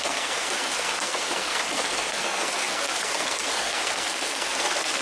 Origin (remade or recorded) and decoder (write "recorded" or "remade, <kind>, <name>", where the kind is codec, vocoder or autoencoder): remade, codec, SNAC